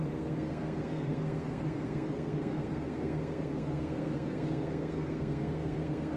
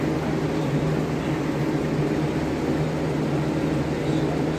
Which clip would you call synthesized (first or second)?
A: first